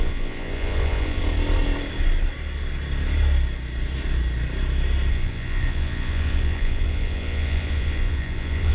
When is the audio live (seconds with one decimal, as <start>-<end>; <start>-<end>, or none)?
1.2-5.1